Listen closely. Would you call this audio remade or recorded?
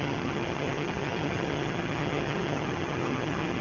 remade